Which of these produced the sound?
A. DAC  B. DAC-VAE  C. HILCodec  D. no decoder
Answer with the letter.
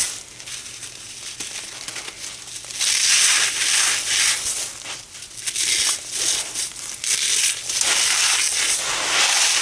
D